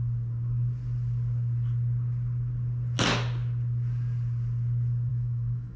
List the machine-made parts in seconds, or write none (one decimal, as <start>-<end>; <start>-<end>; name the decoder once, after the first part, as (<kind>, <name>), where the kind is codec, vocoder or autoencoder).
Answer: 5.1-5.8 (autoencoder, DAC-VAE)